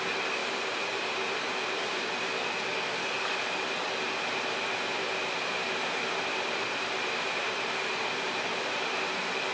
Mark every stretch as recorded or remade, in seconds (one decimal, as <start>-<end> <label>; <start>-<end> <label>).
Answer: 0.0-0.4 recorded; 0.4-2.0 remade; 2.0-5.8 recorded; 5.8-8.8 remade; 8.8-9.5 recorded